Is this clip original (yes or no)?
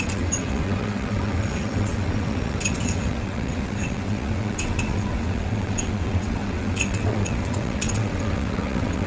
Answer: no